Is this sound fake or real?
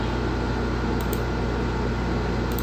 real